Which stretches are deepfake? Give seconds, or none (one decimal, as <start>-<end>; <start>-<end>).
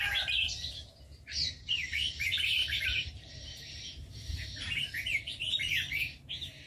0.0-6.7